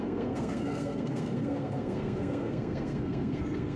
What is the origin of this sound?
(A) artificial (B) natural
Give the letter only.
A